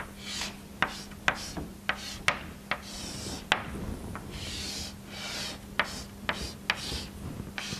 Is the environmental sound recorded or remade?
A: recorded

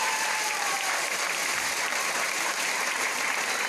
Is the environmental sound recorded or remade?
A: remade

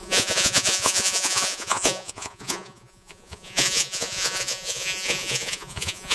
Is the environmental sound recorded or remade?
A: remade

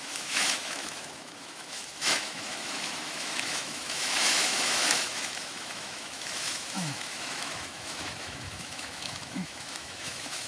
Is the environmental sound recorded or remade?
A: remade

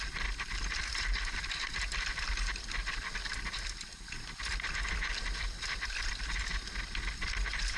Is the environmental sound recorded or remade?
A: recorded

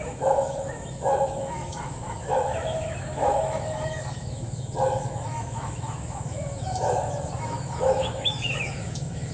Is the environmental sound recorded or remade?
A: remade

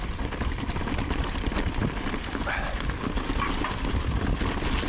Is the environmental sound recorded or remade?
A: recorded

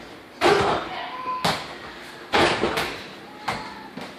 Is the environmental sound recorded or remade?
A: recorded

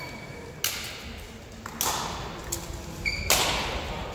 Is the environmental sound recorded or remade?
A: recorded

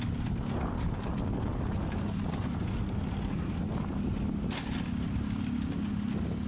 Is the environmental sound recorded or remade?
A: recorded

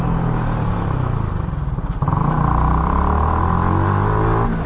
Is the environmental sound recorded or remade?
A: recorded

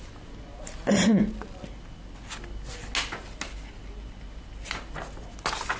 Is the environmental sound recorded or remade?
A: recorded